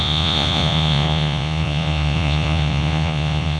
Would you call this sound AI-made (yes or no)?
yes